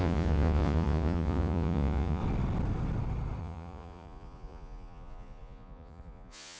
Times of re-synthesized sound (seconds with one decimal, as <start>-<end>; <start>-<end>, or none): 0.0-2.2; 3.4-6.6